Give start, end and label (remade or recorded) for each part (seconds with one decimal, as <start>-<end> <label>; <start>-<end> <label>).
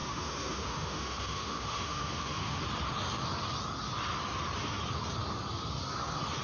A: 0.0-2.6 remade; 2.6-6.4 recorded